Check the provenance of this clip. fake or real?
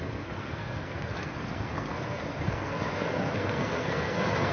fake